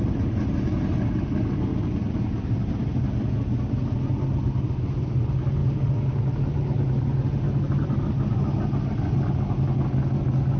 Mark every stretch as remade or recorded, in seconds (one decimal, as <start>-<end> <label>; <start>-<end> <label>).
0.0-10.6 recorded